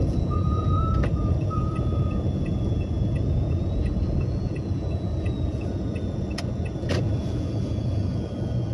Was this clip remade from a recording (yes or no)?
yes